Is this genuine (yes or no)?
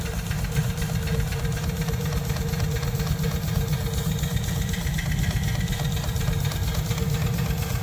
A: yes